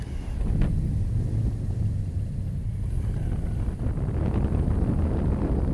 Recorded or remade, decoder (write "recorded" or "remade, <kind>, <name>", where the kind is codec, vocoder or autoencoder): recorded